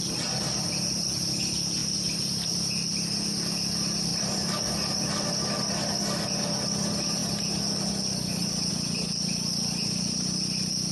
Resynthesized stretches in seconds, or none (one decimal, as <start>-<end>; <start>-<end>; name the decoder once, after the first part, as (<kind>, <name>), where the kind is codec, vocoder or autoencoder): 1.8-2.9 (vocoder, BigVGAN v2); 4.1-4.7